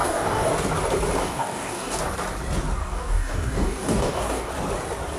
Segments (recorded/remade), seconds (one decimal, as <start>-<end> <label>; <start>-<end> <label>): 0.0-0.5 remade; 0.5-1.2 recorded; 1.2-2.0 remade; 2.0-2.8 recorded; 2.8-4.5 remade; 4.5-5.2 recorded